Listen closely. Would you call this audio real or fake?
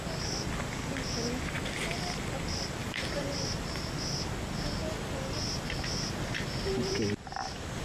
real